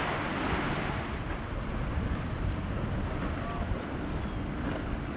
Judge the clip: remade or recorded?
recorded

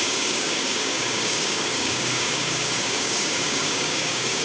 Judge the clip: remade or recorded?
remade